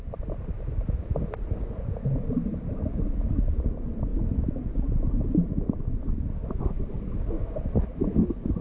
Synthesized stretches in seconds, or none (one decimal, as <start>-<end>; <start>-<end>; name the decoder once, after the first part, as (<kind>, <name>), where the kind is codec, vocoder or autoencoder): none